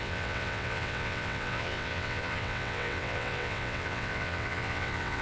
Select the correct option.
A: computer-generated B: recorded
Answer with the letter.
A